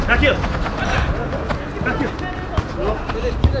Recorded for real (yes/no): yes